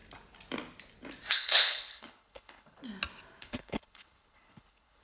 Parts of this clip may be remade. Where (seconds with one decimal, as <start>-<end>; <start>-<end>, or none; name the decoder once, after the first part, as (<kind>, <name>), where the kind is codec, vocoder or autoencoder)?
1.3-2.8 (codec, HILCodec); 3.4-5.0

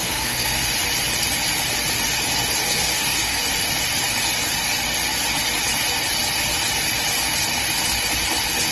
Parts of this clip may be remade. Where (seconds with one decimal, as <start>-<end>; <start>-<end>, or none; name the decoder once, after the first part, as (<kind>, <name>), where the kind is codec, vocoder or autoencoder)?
0.0-0.7 (codec, SNAC); 2.6-3.4

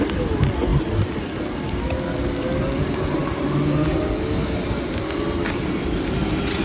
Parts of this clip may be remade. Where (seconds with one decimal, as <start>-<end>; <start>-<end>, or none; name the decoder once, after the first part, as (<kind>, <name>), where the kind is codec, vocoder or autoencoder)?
none

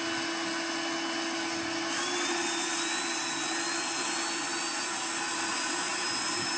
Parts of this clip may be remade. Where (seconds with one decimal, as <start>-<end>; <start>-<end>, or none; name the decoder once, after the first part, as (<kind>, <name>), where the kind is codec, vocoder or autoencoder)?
none

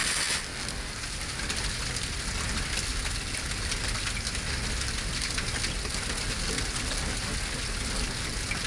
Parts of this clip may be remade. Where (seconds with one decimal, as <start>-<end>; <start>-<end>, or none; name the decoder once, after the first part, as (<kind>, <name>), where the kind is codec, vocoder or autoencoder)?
none

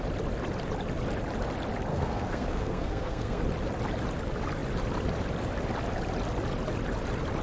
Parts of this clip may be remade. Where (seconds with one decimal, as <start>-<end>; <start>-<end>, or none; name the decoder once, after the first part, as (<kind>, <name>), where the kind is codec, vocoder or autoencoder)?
1.9-3.4 (codec, SNAC)

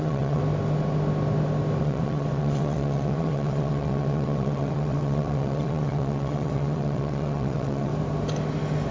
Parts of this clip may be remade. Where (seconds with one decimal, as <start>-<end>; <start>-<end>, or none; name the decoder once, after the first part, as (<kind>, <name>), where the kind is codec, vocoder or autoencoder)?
0.0-0.4 (vocoder, WaveNeXt); 1.8-7.9

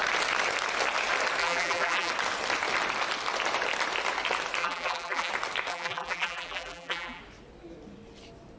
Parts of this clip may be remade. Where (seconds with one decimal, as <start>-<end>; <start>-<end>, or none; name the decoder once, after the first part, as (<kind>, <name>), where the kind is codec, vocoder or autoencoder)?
1.4-2.1 (vocoder, BigVGAN v2); 4.6-5.3; 5.7-7.2